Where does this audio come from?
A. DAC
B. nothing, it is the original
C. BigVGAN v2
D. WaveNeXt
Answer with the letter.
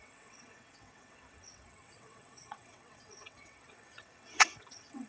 D